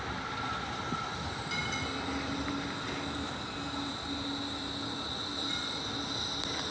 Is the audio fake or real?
real